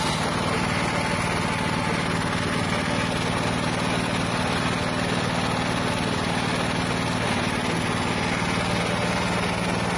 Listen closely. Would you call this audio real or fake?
real